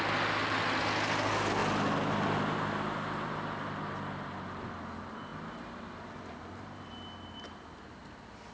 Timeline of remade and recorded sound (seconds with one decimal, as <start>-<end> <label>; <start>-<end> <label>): 0.0-8.5 recorded

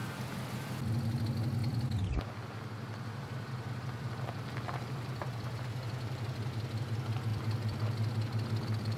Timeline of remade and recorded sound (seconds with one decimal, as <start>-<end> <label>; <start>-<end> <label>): 0.0-1.2 remade; 1.2-1.6 recorded; 1.6-5.6 remade; 5.6-7.3 recorded; 7.3-9.0 remade